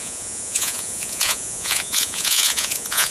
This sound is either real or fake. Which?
fake